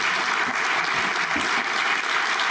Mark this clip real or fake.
real